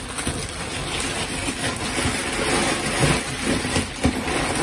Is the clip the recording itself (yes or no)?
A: yes